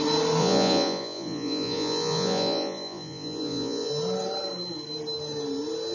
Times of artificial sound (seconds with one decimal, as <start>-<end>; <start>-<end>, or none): 0.4-3.9